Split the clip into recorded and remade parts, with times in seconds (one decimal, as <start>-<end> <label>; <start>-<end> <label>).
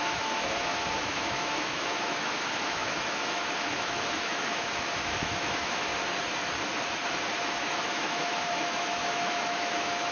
0.0-5.9 remade; 5.9-7.4 recorded; 7.4-10.1 remade